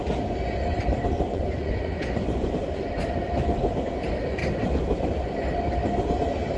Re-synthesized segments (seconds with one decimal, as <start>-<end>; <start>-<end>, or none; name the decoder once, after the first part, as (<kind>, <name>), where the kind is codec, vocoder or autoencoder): 1.3-2.5 (vocoder, Vocos)